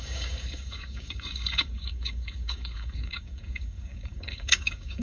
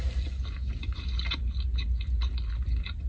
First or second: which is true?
second